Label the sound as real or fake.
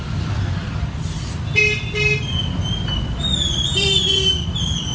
fake